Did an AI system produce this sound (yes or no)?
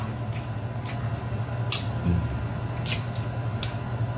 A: no